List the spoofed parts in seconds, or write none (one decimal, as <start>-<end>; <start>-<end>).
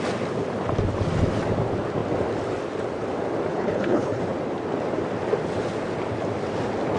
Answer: 3.5-4.2